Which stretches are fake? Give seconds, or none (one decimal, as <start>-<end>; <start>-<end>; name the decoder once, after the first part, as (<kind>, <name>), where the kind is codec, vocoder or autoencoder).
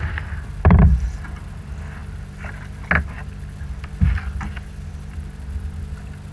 none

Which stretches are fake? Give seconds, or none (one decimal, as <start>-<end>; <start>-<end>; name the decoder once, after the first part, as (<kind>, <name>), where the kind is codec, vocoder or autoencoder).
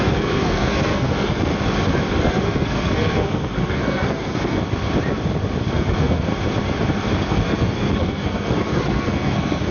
0.0-1.5 (codec, SNAC); 2.2-4.6; 5.6-6.3; 7.2-9.7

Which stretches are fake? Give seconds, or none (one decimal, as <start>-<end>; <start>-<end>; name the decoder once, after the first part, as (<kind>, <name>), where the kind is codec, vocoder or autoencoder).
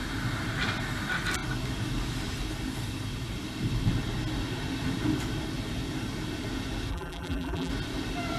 6.9-7.7 (vocoder, BigVGAN v2)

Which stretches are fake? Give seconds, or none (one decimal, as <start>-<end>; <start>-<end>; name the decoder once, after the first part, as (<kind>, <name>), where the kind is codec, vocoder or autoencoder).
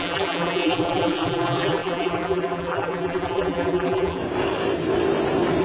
0.0-4.2 (vocoder, BigVGAN v2)